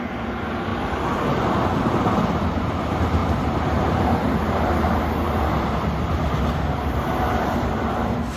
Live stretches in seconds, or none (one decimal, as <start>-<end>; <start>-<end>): 0.0-0.7; 1.9-8.4